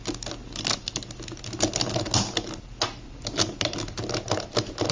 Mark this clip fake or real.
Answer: real